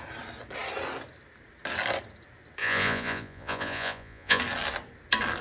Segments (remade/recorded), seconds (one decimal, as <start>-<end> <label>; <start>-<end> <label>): 0.0-2.6 recorded; 2.6-4.4 remade; 4.4-5.4 recorded